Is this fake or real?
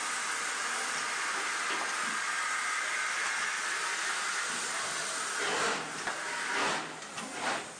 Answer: real